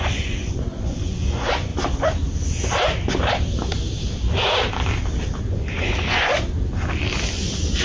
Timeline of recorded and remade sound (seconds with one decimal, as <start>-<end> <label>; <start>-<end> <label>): 0.0-1.7 remade; 1.7-5.4 recorded; 5.4-6.3 remade; 6.3-7.8 recorded